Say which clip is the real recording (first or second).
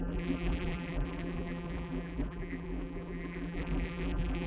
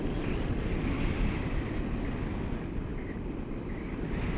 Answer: second